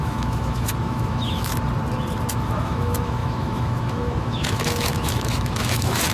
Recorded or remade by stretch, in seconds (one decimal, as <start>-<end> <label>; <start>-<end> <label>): 0.0-1.5 remade; 1.5-2.3 recorded; 2.3-6.1 remade